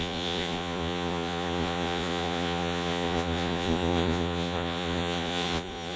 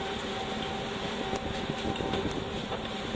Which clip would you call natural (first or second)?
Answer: second